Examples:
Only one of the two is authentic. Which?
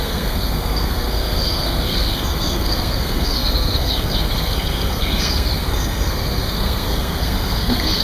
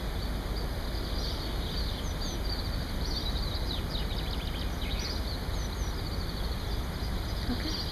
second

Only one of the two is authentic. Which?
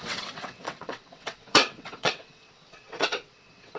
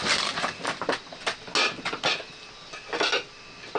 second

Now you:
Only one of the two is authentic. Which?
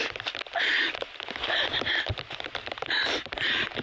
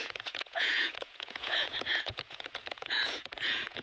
first